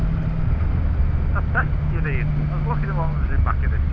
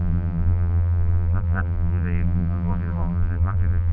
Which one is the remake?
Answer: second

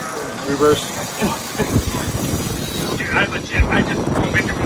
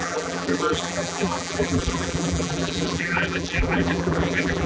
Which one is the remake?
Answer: second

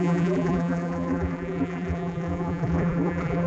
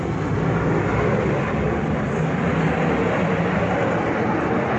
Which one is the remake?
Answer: first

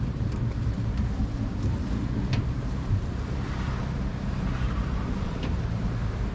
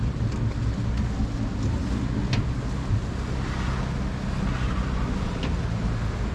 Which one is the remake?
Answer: first